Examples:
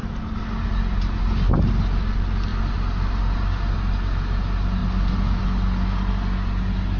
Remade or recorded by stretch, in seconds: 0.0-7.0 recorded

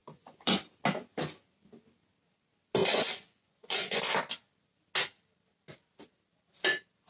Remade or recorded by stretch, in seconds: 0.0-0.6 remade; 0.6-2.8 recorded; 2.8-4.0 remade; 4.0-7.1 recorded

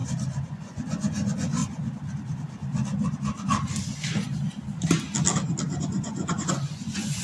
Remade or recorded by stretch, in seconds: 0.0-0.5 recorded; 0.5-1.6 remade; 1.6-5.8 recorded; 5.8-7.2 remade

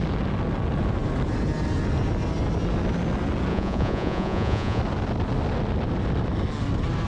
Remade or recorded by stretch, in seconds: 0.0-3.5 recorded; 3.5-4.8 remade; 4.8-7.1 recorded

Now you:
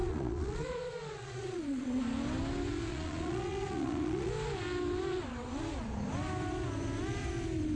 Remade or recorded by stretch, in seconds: 0.0-2.0 remade; 2.0-2.9 recorded; 2.9-4.3 remade; 4.3-7.8 recorded

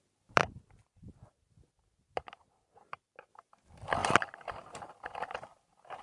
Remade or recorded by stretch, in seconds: 0.0-6.0 recorded